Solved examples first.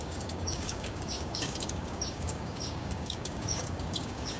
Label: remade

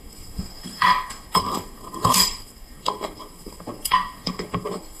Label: remade